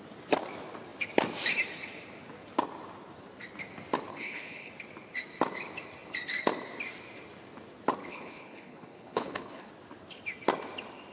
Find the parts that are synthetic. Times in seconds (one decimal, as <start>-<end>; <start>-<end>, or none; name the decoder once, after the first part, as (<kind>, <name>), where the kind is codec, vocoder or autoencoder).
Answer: 4.1-4.7 (codec, HILCodec); 8.0-9.7